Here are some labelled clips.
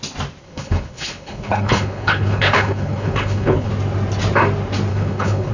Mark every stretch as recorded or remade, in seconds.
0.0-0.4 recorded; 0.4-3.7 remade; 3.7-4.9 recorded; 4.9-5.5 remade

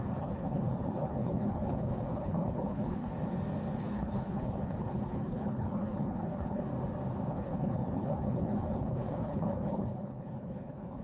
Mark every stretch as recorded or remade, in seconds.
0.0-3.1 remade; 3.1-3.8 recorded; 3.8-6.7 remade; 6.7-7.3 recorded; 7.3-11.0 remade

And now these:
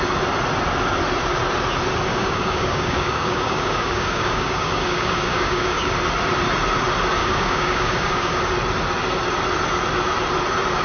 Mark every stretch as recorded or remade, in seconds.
0.0-2.1 recorded; 2.1-5.9 remade; 5.9-7.2 recorded; 7.2-8.4 remade; 8.4-10.8 recorded